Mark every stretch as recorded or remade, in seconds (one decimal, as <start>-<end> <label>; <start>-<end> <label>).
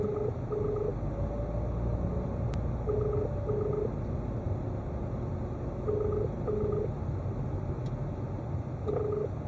0.0-9.5 recorded